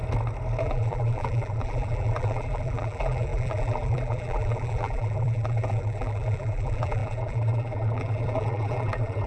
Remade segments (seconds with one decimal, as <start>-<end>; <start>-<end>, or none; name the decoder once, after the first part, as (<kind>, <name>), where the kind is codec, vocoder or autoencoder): 0.6-9.3 (vocoder, BigVGAN v2)